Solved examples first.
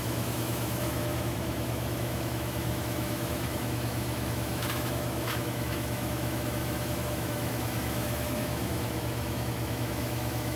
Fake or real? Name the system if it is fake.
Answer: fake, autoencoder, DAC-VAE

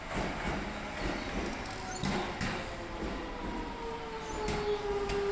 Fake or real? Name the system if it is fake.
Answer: real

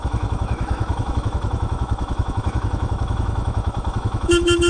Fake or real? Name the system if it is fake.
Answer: fake, autoencoder, DAC-VAE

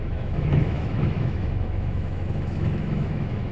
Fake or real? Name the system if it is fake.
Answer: fake, autoencoder, DAC-VAE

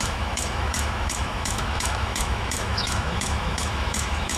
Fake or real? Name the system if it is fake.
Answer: fake, autoencoder, DAC-VAE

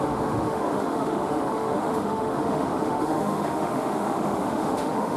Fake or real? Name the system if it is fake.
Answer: fake, autoencoder, DAC-VAE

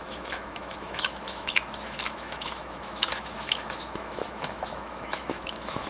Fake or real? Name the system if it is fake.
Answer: fake, autoencoder, DAC-VAE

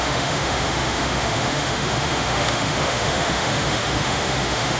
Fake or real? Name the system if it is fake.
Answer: fake, autoencoder, DAC-VAE